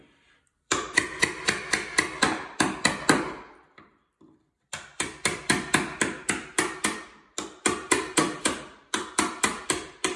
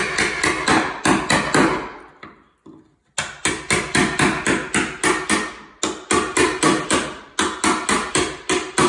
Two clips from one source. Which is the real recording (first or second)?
second